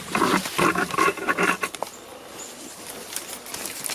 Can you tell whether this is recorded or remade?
recorded